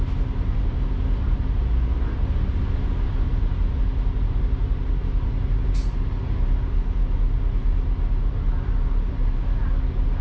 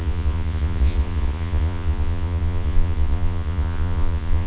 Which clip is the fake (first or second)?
second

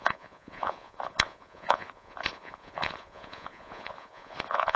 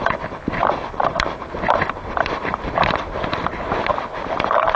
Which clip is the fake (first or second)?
first